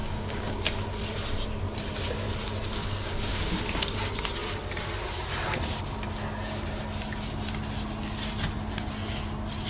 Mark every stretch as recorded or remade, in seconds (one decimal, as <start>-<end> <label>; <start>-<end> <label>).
0.0-0.7 remade; 0.7-2.8 recorded; 2.8-3.6 remade; 3.6-9.7 recorded